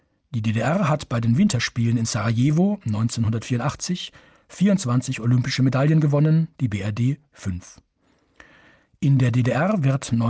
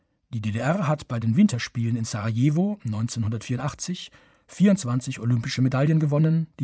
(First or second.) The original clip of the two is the first